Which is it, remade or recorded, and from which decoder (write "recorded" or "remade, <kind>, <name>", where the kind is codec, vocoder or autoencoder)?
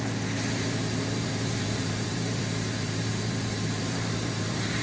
remade, vocoder, BigVGAN v2